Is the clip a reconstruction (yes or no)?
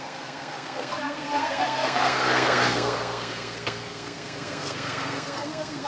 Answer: yes